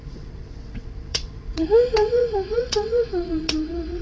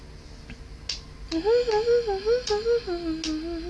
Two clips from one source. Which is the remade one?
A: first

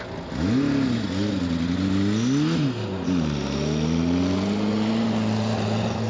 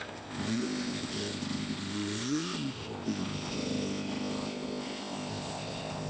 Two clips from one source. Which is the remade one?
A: second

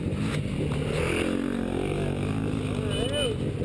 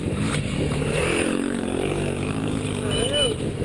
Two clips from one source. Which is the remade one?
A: second